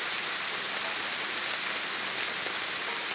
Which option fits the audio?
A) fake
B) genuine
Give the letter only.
B